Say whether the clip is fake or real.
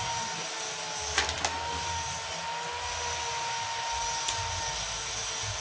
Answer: real